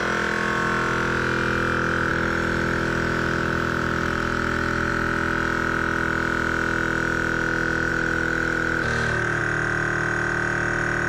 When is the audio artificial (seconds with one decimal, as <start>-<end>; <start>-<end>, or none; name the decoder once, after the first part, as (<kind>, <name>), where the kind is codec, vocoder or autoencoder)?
2.1-4.9 (autoencoder, DAC-VAE); 7.9-9.4